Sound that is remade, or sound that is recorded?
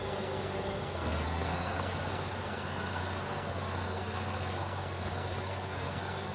remade